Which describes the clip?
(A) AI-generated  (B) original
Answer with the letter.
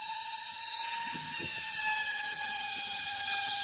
A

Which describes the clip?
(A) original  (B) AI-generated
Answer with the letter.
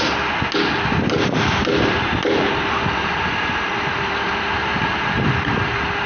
A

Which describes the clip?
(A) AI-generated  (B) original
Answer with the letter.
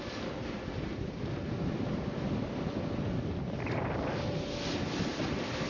B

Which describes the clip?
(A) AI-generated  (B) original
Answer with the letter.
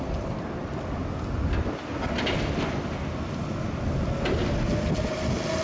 B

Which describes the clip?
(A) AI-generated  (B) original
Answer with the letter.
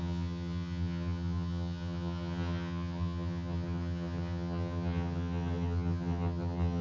A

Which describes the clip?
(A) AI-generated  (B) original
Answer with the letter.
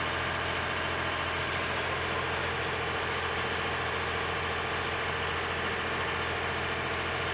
B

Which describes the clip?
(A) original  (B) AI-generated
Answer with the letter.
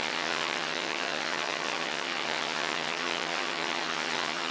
B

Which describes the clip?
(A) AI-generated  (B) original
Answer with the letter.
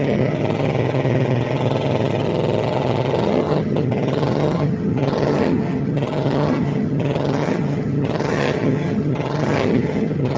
A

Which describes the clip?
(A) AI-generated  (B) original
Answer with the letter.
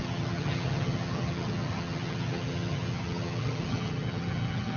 A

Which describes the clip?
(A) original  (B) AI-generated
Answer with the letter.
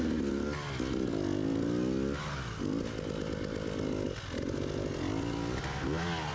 A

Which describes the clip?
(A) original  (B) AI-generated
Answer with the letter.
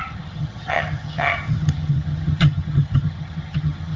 B